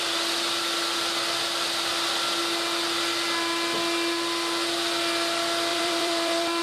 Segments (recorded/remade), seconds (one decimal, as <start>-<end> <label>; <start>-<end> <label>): 0.0-5.7 recorded; 5.7-6.6 remade